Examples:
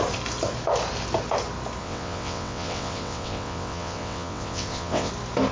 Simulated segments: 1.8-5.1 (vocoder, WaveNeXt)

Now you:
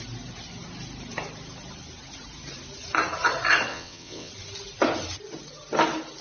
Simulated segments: 3.7-4.3 (vocoder, WaveNeXt)

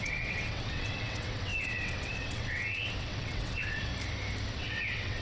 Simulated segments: 0.0-3.9 (vocoder, WaveNeXt); 4.5-5.2

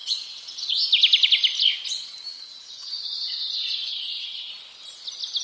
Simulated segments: 0.0-0.7 (vocoder, WaveNeXt); 2.3-2.9; 3.9-4.5

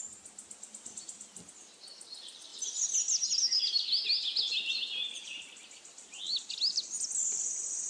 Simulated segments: none

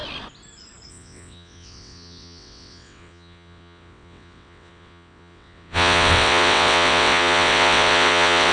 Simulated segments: 0.9-8.5 (vocoder, WaveNeXt)

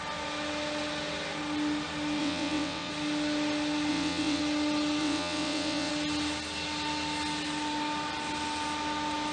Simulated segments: 2.2-2.9 (vocoder, WaveNeXt); 3.9-4.4; 5.0-5.9